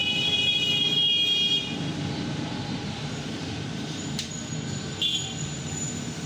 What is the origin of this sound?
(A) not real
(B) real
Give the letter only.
A